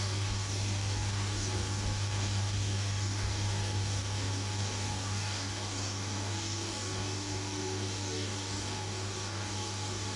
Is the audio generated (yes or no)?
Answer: yes